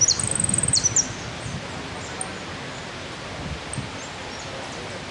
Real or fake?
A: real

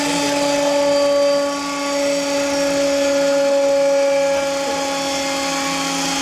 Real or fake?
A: real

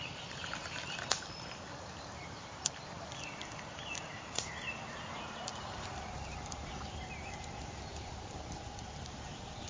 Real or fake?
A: fake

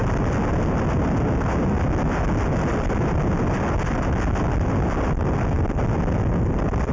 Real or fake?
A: real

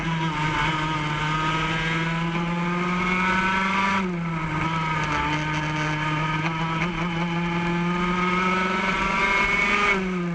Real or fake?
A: real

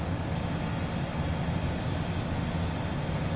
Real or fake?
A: real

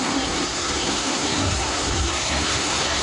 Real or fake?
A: fake